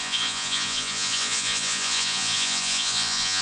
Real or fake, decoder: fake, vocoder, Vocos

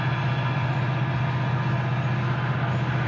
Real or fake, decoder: real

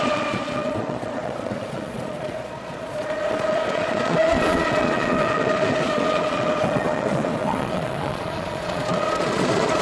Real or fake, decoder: fake, vocoder, Vocos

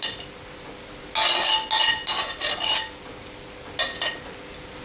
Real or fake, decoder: real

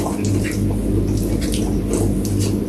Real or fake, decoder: real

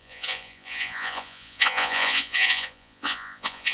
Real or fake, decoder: fake, vocoder, Vocos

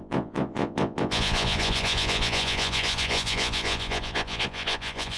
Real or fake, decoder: fake, vocoder, Vocos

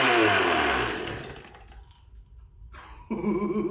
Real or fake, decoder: real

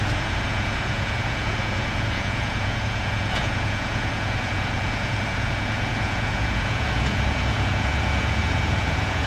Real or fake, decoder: fake, vocoder, Vocos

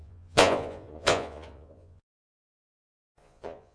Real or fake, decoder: fake, vocoder, Vocos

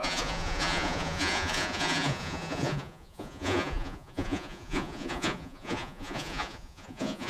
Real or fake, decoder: fake, vocoder, Vocos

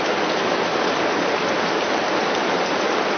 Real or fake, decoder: real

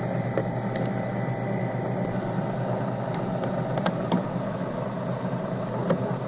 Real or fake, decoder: real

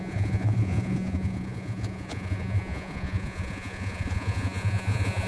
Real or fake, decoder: fake, vocoder, Vocos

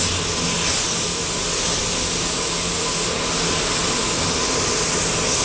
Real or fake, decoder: real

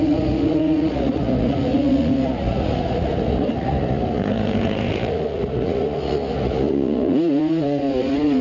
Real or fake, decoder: fake, vocoder, Vocos